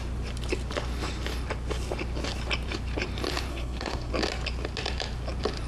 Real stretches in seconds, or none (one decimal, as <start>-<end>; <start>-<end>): 0.0-3.5; 4.1-5.7